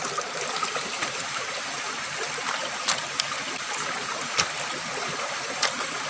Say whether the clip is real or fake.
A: real